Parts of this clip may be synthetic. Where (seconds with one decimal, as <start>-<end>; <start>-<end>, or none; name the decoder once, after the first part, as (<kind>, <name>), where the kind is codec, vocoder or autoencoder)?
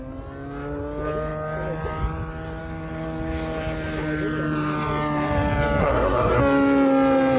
5.8-6.4 (codec, SNAC)